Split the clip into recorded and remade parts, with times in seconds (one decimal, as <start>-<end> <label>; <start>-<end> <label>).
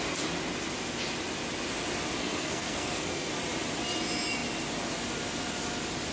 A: 0.0-2.2 recorded; 2.2-3.3 remade; 3.3-6.1 recorded